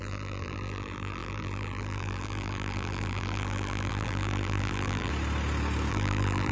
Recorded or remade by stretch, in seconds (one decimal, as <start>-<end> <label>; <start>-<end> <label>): 0.0-5.1 remade; 5.1-5.9 recorded; 5.9-6.5 remade